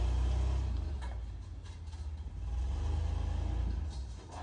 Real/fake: real